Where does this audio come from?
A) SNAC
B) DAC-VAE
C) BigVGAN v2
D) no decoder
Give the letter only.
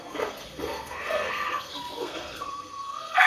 A